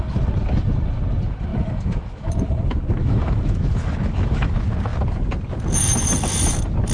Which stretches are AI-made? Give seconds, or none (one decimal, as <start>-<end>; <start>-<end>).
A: 1.5-2.3; 3.0-4.5